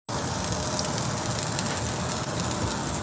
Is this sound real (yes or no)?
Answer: yes